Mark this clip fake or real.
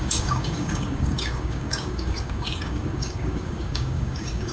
fake